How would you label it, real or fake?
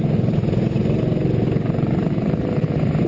real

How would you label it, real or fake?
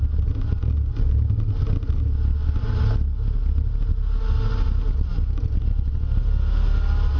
real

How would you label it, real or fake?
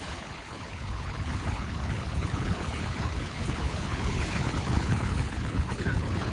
fake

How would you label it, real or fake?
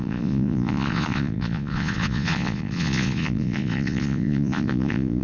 fake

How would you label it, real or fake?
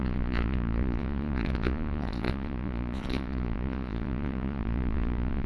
fake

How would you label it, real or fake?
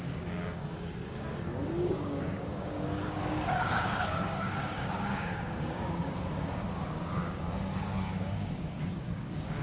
fake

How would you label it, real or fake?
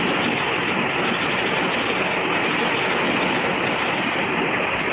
real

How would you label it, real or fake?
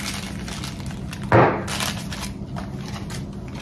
real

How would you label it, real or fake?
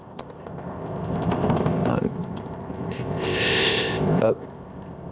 fake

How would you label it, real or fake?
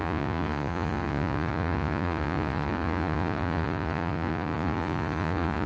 fake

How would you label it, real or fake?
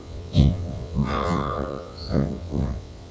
fake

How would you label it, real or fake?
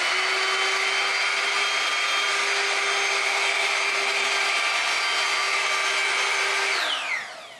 real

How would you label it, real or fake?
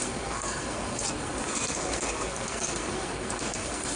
fake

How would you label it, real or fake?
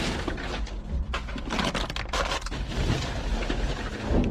real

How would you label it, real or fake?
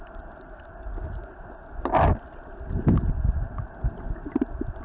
real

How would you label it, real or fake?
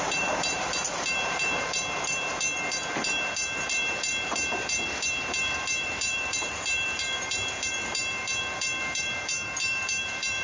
fake